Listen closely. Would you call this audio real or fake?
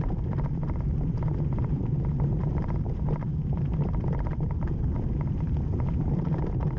fake